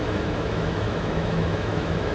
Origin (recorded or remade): remade